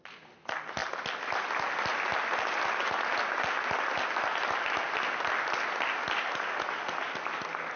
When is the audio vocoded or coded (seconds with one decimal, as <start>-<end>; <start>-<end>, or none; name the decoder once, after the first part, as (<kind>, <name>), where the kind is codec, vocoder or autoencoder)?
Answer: none

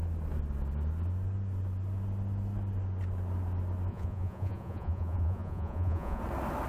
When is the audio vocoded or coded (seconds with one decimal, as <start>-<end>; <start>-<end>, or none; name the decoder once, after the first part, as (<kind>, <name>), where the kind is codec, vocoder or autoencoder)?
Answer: 3.9-6.2 (vocoder, Vocos)

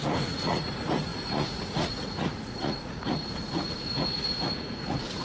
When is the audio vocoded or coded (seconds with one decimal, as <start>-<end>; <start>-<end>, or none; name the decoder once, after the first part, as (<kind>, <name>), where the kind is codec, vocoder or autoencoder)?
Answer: 0.0-5.2 (vocoder, Vocos)

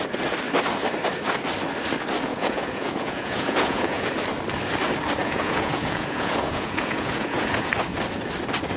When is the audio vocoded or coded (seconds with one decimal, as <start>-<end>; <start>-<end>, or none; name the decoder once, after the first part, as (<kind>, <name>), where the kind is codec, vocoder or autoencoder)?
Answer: 2.3-4.1 (vocoder, Vocos); 5.2-7.7

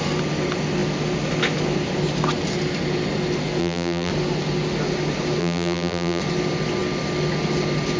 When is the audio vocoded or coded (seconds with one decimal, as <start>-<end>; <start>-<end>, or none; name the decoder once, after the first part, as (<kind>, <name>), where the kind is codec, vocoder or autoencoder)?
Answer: 3.6-4.1 (vocoder, BigVGAN v2); 5.4-6.2